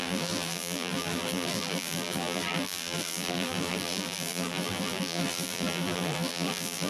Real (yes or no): no